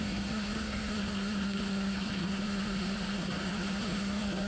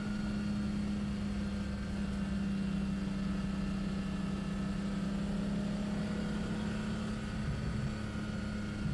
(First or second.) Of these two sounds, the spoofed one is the first